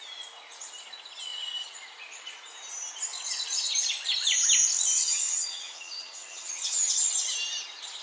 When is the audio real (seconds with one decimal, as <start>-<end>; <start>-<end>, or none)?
0.0-4.9; 6.9-8.0